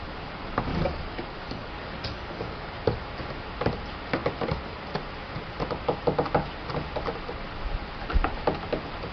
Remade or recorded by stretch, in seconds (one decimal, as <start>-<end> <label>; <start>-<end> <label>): 0.0-0.7 recorded; 0.7-2.7 remade; 2.7-9.1 recorded